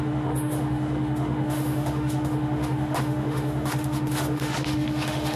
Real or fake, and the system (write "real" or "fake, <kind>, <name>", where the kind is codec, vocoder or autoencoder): fake, autoencoder, DAC-VAE